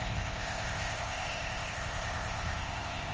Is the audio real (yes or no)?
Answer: no